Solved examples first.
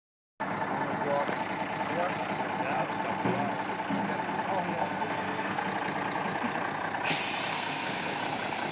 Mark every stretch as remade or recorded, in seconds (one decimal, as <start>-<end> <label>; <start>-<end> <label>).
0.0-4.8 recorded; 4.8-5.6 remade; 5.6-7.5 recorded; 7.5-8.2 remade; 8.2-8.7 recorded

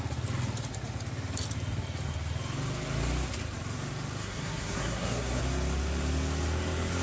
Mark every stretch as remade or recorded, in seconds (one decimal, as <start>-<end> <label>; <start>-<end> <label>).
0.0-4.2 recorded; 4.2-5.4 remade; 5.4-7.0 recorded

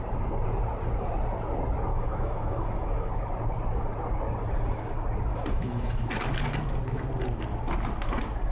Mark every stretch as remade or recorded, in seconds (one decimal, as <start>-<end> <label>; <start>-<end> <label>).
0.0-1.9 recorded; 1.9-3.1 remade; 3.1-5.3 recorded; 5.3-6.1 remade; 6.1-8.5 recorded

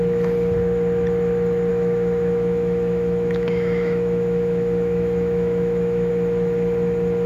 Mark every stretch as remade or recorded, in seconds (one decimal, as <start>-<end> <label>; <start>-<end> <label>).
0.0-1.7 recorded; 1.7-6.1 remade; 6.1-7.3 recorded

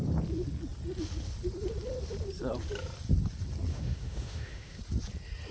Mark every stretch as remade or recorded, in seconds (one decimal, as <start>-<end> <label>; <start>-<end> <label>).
0.0-3.7 recorded; 3.7-4.8 remade; 4.8-5.5 recorded

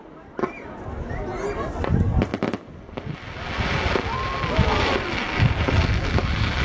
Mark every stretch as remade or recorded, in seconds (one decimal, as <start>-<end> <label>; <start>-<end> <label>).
0.0-6.6 recorded

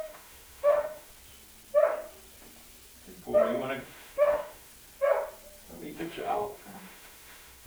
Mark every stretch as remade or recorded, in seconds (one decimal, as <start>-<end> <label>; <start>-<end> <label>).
0.0-1.1 remade; 1.1-3.8 recorded; 3.8-4.7 remade; 4.7-6.0 recorded; 6.0-7.7 remade

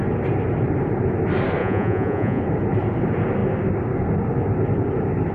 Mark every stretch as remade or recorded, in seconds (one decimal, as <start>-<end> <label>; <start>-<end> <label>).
0.0-1.6 recorded; 1.6-2.4 remade; 2.4-5.3 recorded